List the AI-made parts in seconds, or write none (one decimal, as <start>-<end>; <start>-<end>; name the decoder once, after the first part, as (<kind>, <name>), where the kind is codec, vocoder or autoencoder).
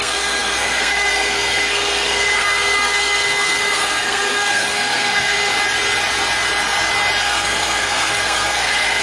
0.0-5.5 (codec, SNAC); 7.2-9.0